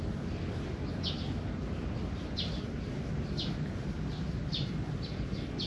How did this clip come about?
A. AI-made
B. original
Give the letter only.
B